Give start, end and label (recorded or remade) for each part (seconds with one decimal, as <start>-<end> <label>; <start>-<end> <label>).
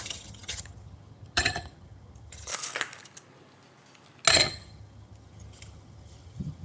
0.0-2.5 remade; 2.5-4.3 recorded; 4.3-6.6 remade